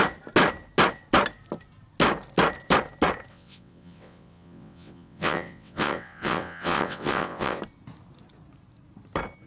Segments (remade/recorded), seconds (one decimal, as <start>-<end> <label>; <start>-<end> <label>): 0.0-3.3 recorded; 3.3-7.6 remade; 7.6-9.5 recorded